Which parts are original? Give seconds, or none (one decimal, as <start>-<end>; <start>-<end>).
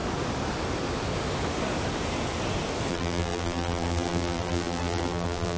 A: 0.0-2.9